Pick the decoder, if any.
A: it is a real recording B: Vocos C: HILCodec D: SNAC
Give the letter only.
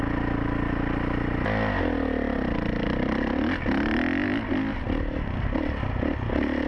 A